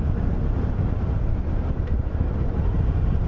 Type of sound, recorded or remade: recorded